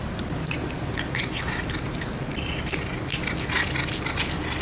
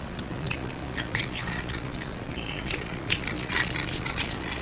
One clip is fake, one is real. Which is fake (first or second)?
second